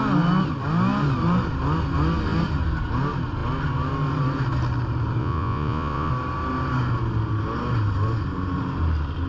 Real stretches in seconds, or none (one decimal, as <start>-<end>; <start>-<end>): 0.0-5.2; 6.1-9.3